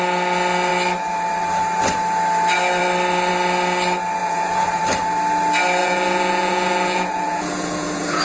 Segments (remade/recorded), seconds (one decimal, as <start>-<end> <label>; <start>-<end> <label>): 0.0-4.2 recorded; 4.2-4.8 remade; 4.8-5.8 recorded; 5.8-8.2 remade